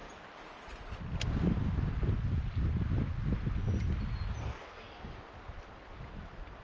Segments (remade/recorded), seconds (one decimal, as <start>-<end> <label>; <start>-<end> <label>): 0.0-4.4 recorded; 4.4-5.2 remade; 5.2-6.6 recorded